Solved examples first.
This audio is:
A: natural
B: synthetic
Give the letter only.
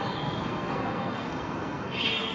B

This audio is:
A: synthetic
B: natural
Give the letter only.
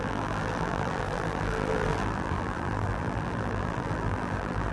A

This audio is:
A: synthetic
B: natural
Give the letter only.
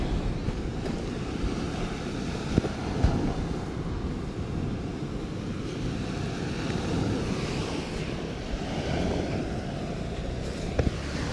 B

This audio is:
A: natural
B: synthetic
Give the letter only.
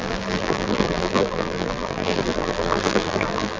B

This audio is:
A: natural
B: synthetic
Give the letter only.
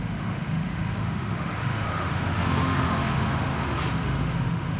B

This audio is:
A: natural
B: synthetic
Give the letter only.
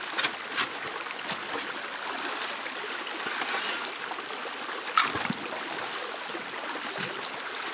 A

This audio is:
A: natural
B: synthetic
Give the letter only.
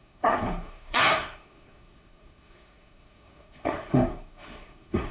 B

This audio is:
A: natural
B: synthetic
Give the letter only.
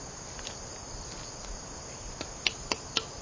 A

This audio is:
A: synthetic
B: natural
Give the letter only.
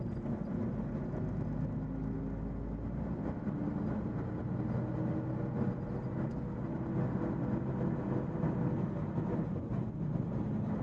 B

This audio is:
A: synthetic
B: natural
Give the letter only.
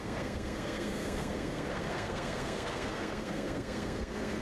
A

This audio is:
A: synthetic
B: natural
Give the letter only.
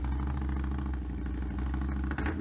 B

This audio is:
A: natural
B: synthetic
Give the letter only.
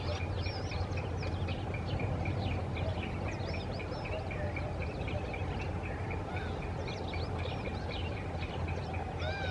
A